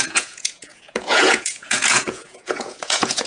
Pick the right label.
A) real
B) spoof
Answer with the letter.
B